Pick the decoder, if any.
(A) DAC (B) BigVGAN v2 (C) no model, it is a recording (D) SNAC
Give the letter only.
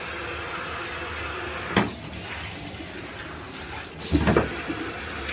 C